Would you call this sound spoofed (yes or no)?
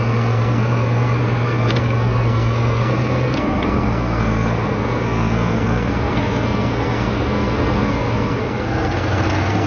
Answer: yes